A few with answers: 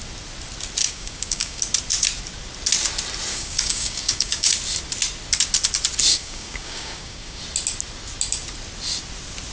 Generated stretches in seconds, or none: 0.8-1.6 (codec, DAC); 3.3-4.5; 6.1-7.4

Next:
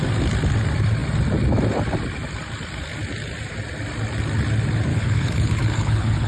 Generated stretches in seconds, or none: 4.9-6.3 (codec, HILCodec)

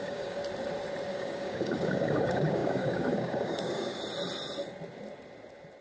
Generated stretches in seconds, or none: 0.0-0.4 (codec, DAC); 1.1-4.0

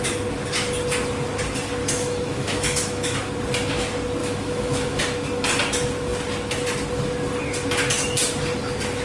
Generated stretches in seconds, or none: 1.8-3.3 (autoencoder, DAC-VAE); 4.2-5.0

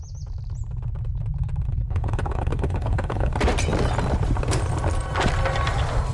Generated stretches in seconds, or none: 1.7-3.3 (codec, HILCodec)

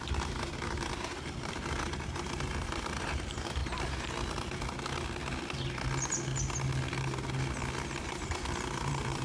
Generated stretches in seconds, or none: 0.0-3.6 (vocoder, BigVGAN v2); 8.0-9.2

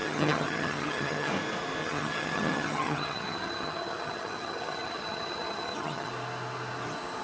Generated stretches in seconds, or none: 0.0-1.3 (vocoder, HiFi-GAN); 1.8-6.1

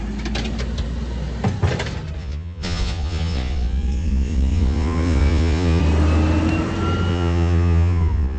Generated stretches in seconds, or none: 2.2-5.8 (vocoder, Vocos); 7.1-8.4